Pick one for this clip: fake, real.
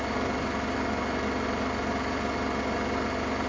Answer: real